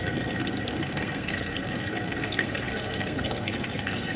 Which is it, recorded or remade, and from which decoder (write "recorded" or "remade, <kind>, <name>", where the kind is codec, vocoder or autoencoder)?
remade, codec, SNAC